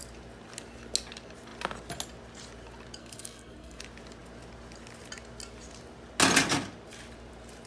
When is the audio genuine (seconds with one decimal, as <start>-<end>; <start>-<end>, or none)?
0.0-3.0; 3.8-7.7